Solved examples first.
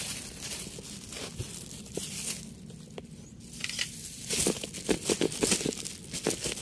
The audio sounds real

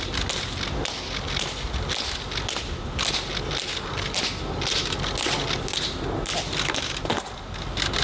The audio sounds real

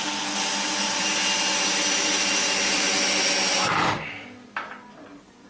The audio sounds real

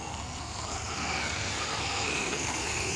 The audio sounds fake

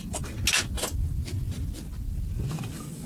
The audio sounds real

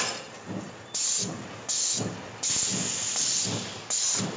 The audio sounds real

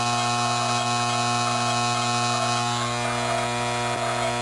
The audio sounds real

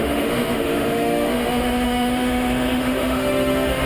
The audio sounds fake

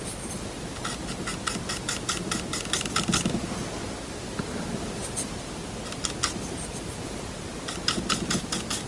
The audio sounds real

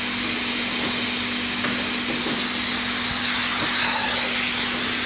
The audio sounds real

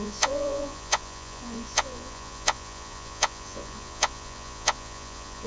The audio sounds fake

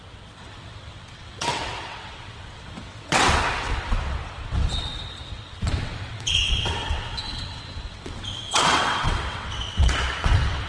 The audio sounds fake